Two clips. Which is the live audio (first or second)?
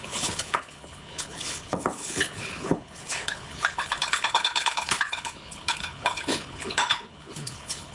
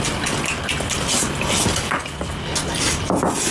second